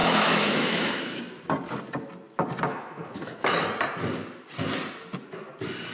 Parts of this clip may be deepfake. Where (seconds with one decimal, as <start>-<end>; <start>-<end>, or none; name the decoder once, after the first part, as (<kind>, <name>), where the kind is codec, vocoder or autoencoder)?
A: 0.0-1.2 (autoencoder, DAC-VAE); 2.7-3.7